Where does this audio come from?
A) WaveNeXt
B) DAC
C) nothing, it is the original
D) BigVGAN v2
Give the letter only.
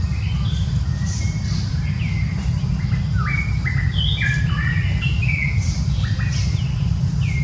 C